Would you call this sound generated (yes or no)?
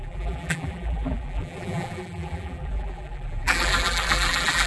yes